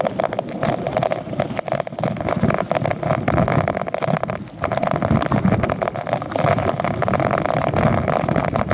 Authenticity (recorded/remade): recorded